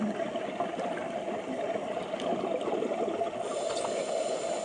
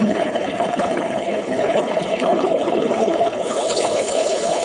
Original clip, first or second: first